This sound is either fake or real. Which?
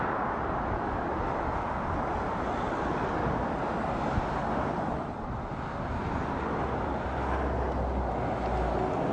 real